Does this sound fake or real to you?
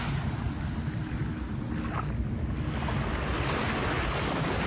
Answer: real